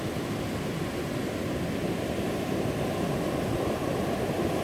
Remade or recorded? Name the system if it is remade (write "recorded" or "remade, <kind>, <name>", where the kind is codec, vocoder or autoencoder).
recorded